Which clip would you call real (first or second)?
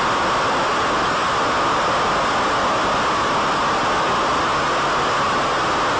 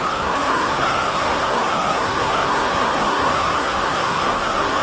first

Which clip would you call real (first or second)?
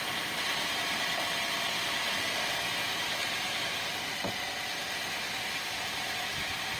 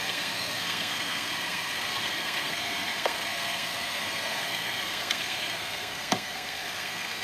first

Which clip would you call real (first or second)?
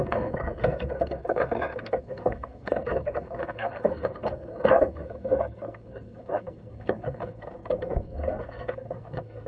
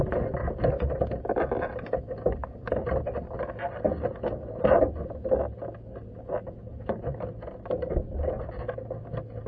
second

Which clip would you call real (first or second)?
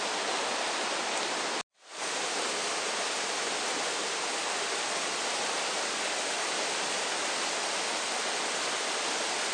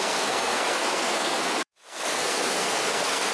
first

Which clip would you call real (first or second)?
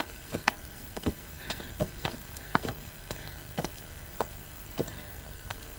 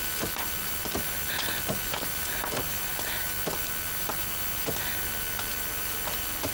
second